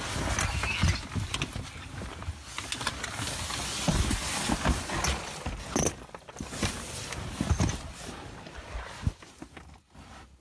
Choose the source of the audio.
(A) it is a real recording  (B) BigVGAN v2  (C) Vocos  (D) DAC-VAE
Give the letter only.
A